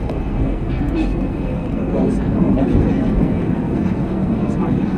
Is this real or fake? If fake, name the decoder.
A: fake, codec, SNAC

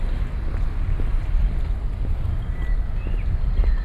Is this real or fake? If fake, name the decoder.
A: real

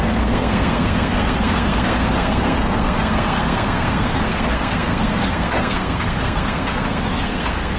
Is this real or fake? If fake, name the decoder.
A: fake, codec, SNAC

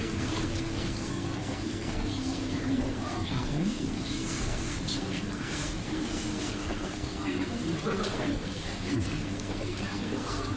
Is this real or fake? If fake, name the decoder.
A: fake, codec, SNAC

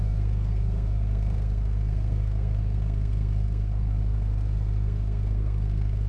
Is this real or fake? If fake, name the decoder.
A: fake, codec, SNAC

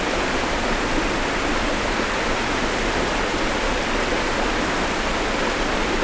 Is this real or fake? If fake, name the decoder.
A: real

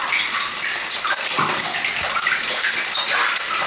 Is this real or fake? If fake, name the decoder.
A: real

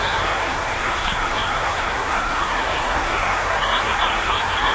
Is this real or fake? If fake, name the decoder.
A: fake, codec, SNAC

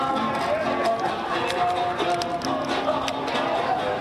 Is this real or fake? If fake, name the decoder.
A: real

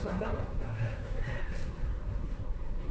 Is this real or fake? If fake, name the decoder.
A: fake, codec, SNAC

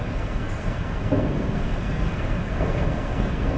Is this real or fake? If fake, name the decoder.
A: fake, codec, SNAC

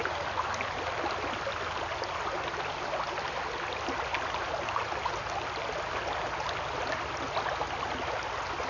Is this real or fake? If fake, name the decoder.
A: real